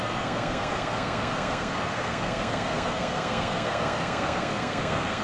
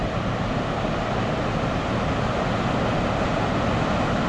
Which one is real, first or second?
second